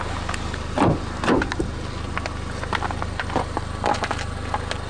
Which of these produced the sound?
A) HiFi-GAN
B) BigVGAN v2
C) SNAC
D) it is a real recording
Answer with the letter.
D